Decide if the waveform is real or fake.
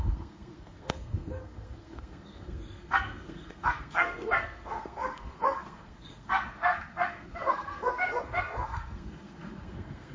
fake